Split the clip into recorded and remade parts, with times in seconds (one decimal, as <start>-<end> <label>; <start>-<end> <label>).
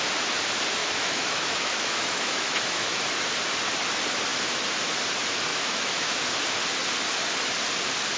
0.0-0.8 recorded; 0.8-3.0 remade; 3.0-5.5 recorded; 5.5-6.1 remade; 6.1-8.2 recorded